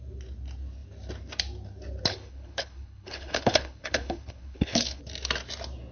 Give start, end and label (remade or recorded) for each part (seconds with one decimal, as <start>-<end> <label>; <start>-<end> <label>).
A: 0.0-2.1 recorded; 2.1-5.0 remade; 5.0-5.9 recorded